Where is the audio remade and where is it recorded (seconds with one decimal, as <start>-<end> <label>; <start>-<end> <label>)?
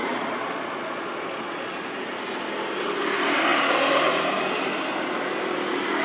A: 0.0-1.7 remade; 1.7-6.0 recorded